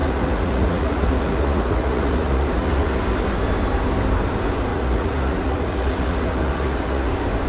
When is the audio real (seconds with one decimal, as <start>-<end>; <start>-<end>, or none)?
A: 3.0-4.7; 7.1-7.5